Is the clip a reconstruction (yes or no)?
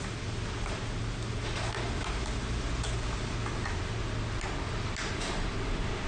no